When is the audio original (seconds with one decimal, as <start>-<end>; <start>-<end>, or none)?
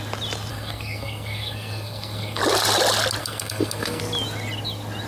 0.0-0.5; 2.4-3.2; 4.0-5.1